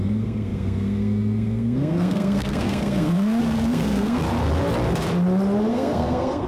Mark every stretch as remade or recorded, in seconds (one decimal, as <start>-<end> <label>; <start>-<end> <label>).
0.0-4.2 remade; 4.2-5.7 recorded; 5.7-6.5 remade